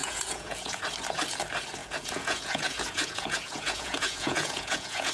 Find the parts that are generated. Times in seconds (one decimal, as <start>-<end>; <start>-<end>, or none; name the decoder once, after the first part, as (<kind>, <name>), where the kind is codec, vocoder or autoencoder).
0.0-0.8 (vocoder, Vocos); 1.8-5.1